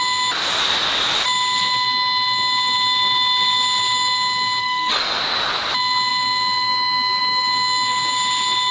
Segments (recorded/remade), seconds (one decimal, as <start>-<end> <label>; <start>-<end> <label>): 0.0-4.6 recorded; 4.6-5.2 remade; 5.2-8.7 recorded